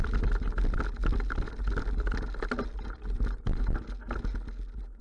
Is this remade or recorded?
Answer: recorded